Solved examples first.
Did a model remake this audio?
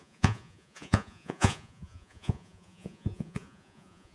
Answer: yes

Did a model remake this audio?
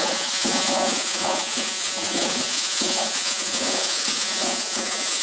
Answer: yes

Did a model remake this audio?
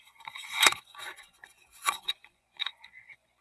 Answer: yes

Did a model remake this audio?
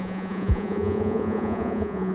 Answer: yes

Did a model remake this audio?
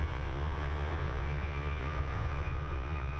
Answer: yes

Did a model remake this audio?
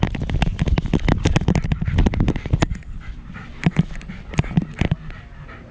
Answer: no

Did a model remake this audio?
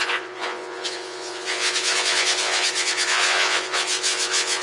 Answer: yes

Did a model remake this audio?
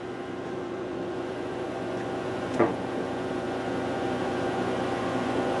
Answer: yes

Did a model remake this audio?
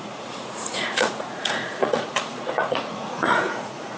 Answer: yes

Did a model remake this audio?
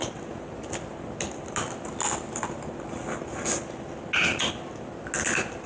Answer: no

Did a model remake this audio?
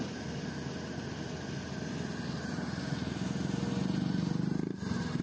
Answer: no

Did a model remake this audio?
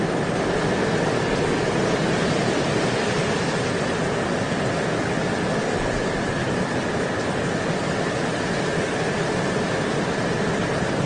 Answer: no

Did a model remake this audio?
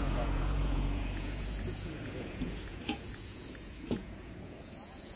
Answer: yes